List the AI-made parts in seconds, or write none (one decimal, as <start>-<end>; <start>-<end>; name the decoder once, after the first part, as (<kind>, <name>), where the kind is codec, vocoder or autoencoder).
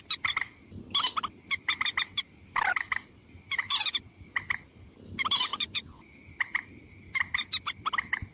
5.5-6.0 (vocoder, Vocos)